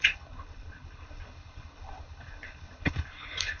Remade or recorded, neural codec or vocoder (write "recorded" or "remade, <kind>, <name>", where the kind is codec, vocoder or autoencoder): remade, codec, HILCodec